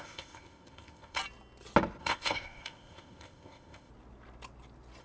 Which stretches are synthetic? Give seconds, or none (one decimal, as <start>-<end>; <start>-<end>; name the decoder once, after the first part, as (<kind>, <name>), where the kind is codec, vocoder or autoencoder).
0.0-1.2 (codec, ZipCodec); 2.0-3.9